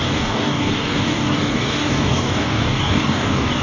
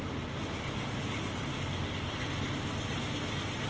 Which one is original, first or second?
second